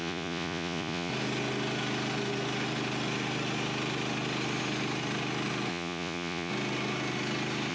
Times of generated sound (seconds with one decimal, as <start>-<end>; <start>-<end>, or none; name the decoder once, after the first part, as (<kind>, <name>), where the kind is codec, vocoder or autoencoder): 0.0-1.1 (vocoder, Vocos); 5.7-6.5